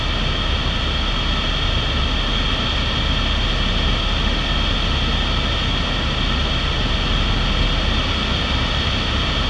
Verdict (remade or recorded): recorded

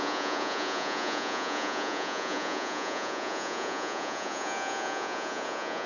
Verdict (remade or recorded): remade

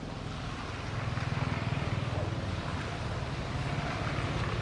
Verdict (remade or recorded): recorded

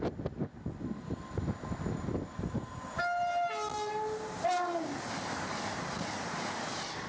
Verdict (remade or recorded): recorded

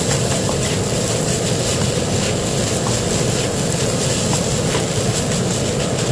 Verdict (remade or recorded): recorded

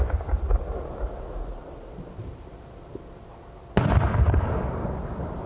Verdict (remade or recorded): recorded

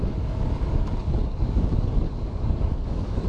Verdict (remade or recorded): remade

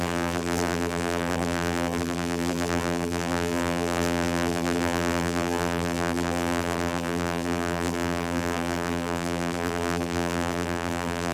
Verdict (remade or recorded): remade